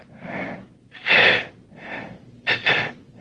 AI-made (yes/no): no